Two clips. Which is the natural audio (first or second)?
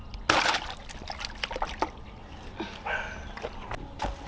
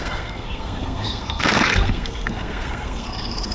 first